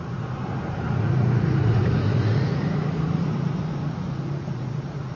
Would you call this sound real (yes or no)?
no